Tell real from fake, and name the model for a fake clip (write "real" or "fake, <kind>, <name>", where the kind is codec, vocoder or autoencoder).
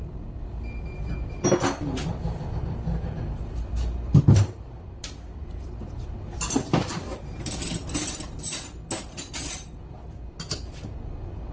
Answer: real